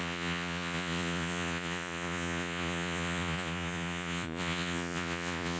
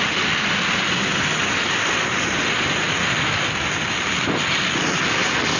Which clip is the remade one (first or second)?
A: first